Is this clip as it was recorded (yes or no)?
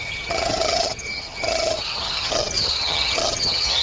no